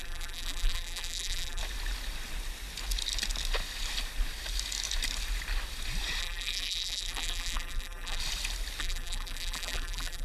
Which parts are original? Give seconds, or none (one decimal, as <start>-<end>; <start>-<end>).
1.6-6.2; 8.2-8.8